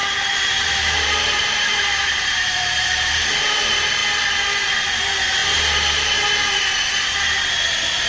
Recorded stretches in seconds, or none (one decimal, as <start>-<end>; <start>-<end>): 3.3-8.1